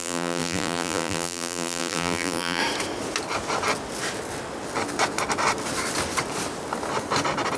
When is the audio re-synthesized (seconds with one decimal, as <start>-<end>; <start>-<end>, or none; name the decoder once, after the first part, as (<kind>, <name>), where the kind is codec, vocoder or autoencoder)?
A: 0.0-2.6 (vocoder, BigVGAN v2)